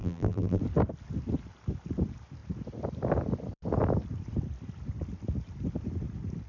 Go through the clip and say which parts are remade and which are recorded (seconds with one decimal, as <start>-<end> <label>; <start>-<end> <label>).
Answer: 0.0-0.6 remade; 0.6-6.5 recorded